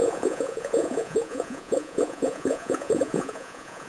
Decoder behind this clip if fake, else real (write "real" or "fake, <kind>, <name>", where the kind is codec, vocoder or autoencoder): fake, vocoder, Vocos